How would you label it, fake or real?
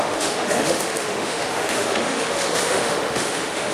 fake